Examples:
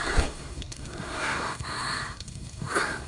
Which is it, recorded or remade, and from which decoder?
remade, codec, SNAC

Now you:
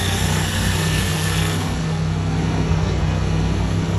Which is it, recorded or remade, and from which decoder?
remade, codec, SNAC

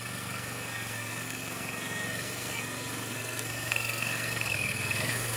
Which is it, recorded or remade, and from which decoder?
remade, codec, SNAC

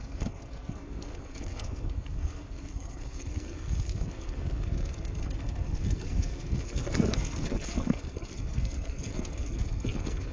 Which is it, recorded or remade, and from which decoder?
remade, codec, SNAC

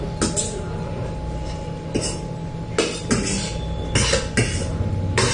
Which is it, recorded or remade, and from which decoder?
recorded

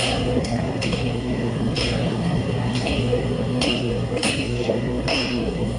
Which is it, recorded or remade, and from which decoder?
remade, codec, SNAC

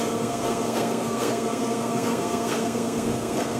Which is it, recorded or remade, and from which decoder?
remade, codec, SNAC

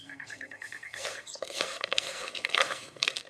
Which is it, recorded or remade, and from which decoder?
remade, codec, SNAC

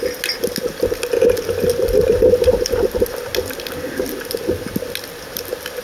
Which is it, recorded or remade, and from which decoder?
recorded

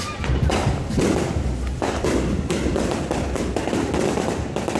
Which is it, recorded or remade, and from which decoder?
recorded